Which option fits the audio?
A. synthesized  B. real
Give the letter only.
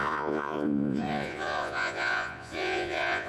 A